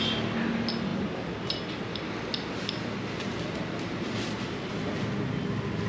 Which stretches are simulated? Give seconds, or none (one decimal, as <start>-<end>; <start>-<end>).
none